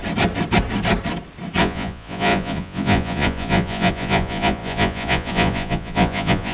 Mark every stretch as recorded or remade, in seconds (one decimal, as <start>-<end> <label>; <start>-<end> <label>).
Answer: 0.0-1.6 recorded; 1.6-6.5 remade